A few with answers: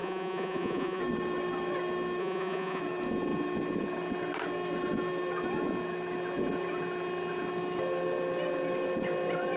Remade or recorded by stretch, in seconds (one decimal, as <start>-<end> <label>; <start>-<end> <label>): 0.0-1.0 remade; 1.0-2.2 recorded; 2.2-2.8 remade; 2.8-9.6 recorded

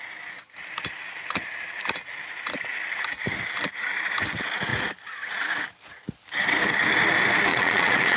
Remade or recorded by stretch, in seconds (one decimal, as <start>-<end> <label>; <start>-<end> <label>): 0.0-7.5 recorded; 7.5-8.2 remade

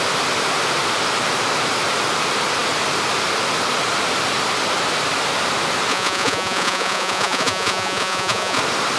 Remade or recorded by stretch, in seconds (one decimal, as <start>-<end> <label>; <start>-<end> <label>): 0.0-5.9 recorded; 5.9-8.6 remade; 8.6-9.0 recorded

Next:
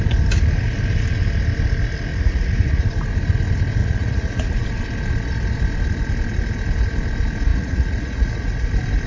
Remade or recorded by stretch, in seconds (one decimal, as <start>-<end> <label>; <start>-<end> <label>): 0.0-2.1 recorded; 2.1-2.9 remade; 2.9-3.8 recorded; 3.8-4.8 remade; 4.8-7.5 recorded; 7.5-8.7 remade; 8.7-9.1 recorded

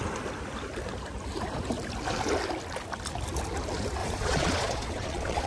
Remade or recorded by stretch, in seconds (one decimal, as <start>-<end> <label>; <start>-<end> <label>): 0.0-4.0 recorded; 4.0-5.5 remade

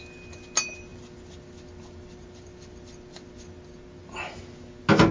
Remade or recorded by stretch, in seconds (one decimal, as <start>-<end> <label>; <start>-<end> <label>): 0.0-5.1 recorded

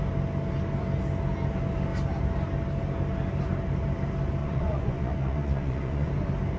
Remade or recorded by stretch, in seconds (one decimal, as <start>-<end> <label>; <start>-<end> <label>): 0.0-4.4 recorded; 4.4-6.1 remade; 6.1-6.6 recorded

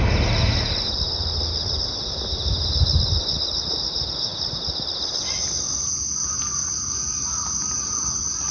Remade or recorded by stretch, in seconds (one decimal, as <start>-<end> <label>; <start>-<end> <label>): 0.0-8.5 recorded